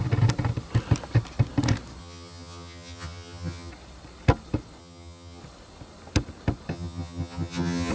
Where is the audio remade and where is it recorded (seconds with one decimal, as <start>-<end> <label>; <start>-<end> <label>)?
0.0-2.0 recorded; 2.0-3.7 remade; 3.7-4.8 recorded; 4.8-5.4 remade; 5.4-6.7 recorded; 6.7-7.9 remade

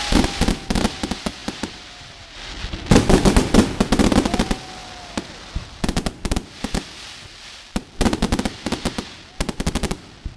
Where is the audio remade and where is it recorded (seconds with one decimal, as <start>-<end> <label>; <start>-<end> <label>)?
0.0-10.4 recorded

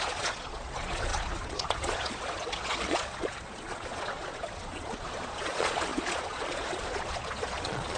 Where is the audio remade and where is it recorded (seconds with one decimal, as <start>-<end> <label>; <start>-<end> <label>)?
0.0-8.0 remade

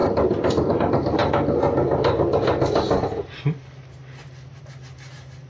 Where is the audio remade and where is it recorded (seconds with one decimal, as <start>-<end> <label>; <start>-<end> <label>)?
0.0-5.5 recorded

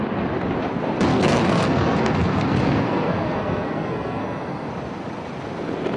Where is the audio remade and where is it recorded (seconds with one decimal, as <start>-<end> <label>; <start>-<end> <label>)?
0.0-1.1 recorded; 1.1-4.7 remade; 4.7-6.0 recorded